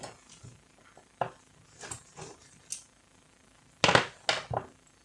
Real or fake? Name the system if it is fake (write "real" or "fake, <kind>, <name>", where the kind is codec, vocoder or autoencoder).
real